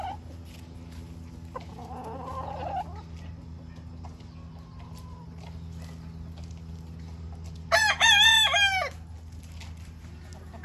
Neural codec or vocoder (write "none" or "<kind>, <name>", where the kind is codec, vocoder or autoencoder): none